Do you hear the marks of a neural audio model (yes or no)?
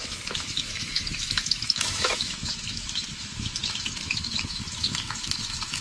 yes